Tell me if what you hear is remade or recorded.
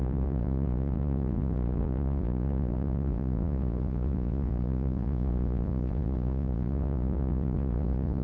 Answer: remade